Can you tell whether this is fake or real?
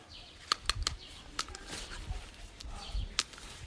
fake